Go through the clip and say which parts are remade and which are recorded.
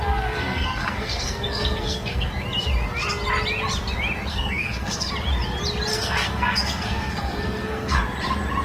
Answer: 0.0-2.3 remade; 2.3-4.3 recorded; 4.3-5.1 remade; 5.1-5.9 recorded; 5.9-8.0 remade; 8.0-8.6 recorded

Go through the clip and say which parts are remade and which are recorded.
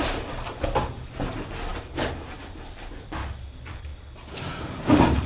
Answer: 0.0-5.3 recorded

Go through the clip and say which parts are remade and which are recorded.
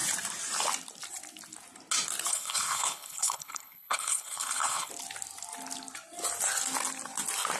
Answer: 0.0-2.3 recorded; 2.3-4.9 remade; 4.9-7.6 recorded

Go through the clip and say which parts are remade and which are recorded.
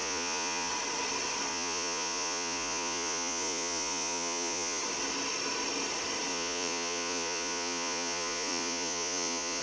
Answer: 0.0-0.7 remade; 0.7-1.5 recorded; 1.5-4.8 remade; 4.8-6.3 recorded; 6.3-9.6 remade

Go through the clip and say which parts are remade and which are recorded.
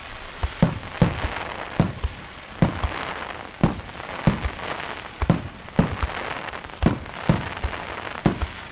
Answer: 0.0-8.7 recorded